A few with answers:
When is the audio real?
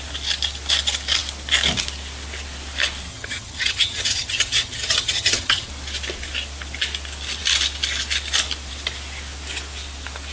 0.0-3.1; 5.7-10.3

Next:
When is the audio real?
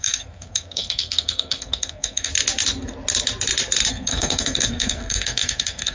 2.3-3.9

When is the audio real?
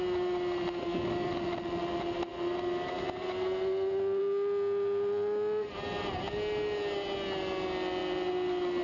0.0-8.8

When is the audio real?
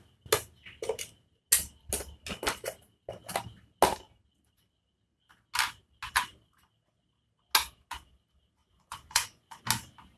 0.0-8.6; 9.6-10.2